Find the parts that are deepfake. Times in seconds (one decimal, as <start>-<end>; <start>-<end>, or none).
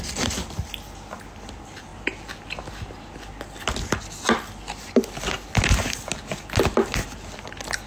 none